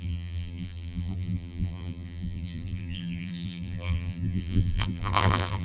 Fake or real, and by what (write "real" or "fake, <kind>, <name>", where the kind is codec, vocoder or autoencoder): fake, vocoder, BigVGAN v2